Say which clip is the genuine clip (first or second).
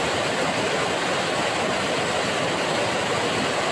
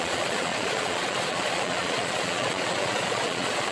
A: first